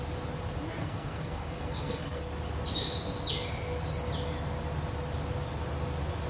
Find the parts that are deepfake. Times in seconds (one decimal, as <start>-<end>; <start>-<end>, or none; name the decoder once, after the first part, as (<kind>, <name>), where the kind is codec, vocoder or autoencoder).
0.8-2.2 (codec, SNAC)